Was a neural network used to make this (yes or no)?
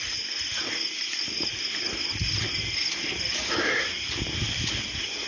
no